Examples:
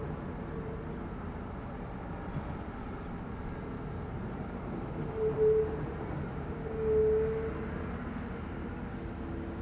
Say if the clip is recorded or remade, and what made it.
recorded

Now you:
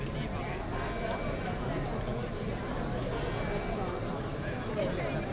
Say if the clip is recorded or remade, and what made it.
recorded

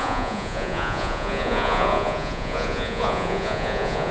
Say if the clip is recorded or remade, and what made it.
remade, vocoder, Vocos